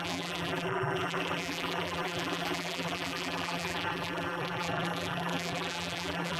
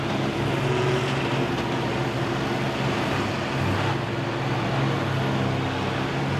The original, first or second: second